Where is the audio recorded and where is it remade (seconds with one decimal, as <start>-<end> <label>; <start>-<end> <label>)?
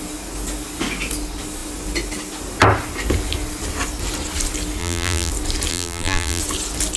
0.0-4.8 recorded; 4.8-5.3 remade; 5.3-5.7 recorded; 5.7-6.4 remade; 6.4-7.0 recorded